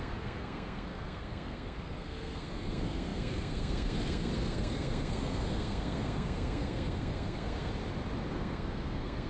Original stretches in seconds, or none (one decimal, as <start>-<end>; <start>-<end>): 7.7-8.3